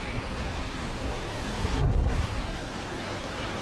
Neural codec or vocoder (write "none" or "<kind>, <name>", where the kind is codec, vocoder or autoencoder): codec, SNAC